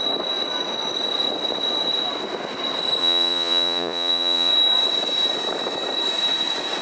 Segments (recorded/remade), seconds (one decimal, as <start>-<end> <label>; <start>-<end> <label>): 0.0-3.0 recorded; 3.0-4.5 remade; 4.5-6.8 recorded